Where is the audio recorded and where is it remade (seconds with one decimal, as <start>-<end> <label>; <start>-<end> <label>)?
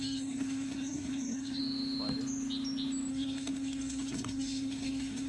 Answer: 0.0-1.6 remade; 1.6-3.1 recorded; 3.1-5.3 remade